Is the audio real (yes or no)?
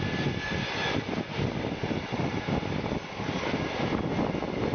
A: yes